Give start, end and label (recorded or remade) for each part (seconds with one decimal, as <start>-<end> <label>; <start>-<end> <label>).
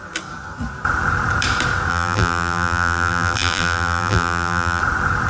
0.0-1.9 recorded; 1.9-4.8 remade; 4.8-5.3 recorded